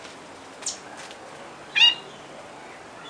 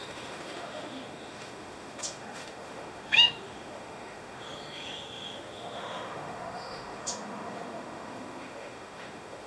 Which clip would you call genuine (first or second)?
first